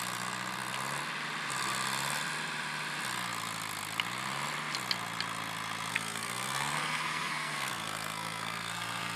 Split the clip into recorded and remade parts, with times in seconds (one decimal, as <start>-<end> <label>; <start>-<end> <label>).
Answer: 0.0-5.9 recorded; 5.9-9.2 remade